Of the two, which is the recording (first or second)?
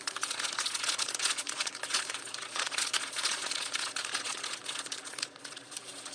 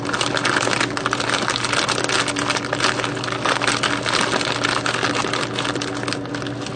second